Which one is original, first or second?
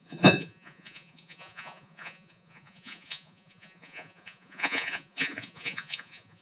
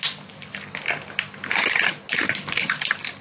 second